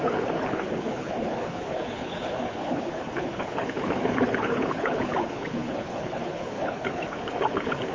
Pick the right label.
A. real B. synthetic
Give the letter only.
B